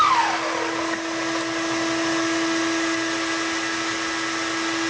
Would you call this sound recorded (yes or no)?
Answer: yes